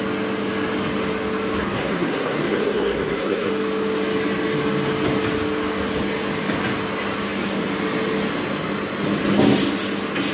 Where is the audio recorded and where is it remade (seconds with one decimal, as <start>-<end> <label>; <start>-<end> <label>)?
0.0-1.6 recorded; 1.6-3.5 remade; 3.5-10.3 recorded